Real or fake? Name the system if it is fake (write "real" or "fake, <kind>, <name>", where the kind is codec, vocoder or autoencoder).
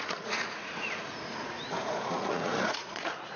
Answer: fake, vocoder, Vocos